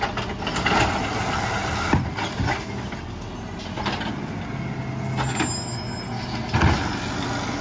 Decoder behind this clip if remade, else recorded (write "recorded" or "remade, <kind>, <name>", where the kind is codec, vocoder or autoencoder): recorded